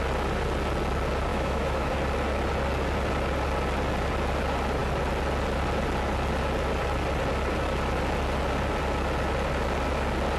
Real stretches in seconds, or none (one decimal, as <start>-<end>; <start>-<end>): 0.0-1.3; 1.9-10.4